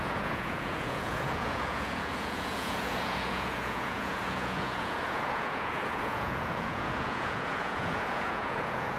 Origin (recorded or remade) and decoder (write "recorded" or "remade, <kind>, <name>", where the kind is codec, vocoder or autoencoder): remade, vocoder, Vocos